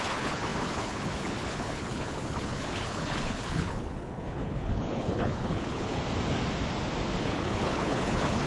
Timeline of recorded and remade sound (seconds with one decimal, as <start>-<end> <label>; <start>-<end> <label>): 0.0-6.0 remade; 6.0-7.2 recorded; 7.2-8.5 remade